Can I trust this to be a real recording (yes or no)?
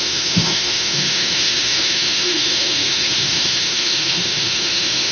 no